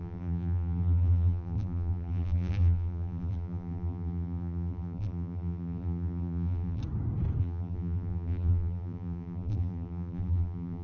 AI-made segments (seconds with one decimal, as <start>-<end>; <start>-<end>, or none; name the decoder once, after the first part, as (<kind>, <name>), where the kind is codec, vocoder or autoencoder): 0.0-6.8 (vocoder, BigVGAN v2); 7.4-10.8